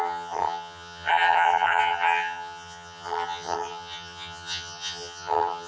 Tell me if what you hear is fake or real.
fake